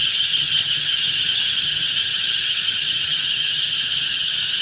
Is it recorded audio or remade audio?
remade